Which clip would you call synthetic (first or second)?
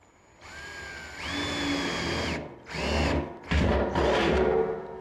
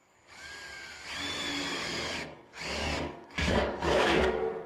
second